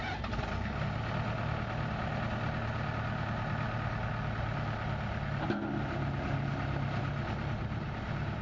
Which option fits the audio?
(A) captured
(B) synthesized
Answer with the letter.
A